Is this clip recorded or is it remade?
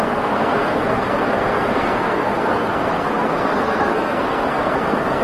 remade